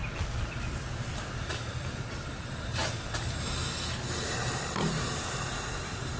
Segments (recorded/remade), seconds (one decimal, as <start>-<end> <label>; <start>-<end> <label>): 0.0-2.4 recorded; 2.4-2.8 remade; 2.8-6.2 recorded

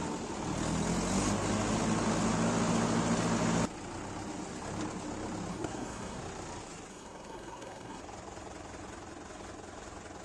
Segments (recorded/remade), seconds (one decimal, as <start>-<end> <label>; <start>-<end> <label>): 0.0-5.5 recorded; 5.5-6.2 remade; 6.2-6.9 recorded; 6.9-8.0 remade; 8.0-10.2 recorded

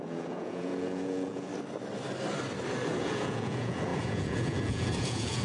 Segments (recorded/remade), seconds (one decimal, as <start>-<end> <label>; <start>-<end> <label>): 0.0-1.5 remade; 1.5-3.0 recorded; 3.0-5.4 remade